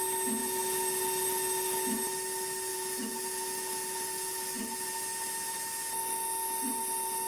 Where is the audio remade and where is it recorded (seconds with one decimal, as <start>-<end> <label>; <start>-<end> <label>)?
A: 0.0-0.4 recorded; 0.4-2.0 remade; 2.0-2.7 recorded; 2.7-4.9 remade; 4.9-7.3 recorded